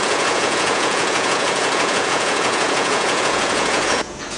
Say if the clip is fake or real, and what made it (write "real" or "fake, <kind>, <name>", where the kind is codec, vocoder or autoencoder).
fake, vocoder, Vocos